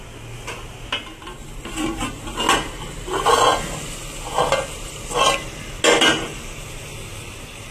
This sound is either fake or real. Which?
real